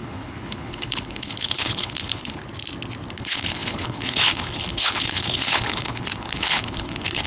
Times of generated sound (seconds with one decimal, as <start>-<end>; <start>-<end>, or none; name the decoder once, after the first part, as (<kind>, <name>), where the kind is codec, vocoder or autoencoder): 0.0-2.4 (codec, HILCodec); 3.2-7.3